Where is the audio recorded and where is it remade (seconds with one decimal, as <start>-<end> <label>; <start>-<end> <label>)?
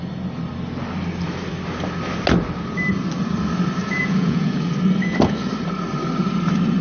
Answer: 0.0-3.8 recorded; 3.8-4.7 remade; 4.7-6.8 recorded